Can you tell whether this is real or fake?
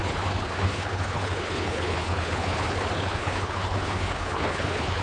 fake